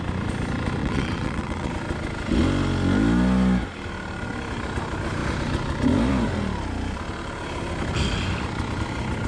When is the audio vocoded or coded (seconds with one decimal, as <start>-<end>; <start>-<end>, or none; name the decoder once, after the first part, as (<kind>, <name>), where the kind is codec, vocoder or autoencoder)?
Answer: 0.8-1.7 (vocoder, WaveNeXt)